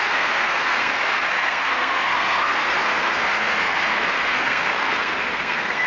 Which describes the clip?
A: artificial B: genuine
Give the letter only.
A